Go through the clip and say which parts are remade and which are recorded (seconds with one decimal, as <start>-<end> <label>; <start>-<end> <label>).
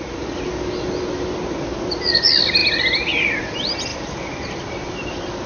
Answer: 0.0-5.5 recorded